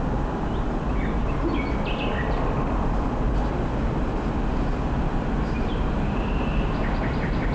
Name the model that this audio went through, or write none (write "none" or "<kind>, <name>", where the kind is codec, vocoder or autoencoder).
none